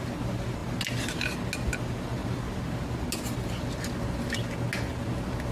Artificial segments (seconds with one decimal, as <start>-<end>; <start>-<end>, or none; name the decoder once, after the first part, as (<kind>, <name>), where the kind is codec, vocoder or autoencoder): none